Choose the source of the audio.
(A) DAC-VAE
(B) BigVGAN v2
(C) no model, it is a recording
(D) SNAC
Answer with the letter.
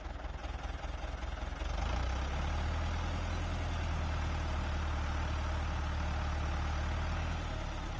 C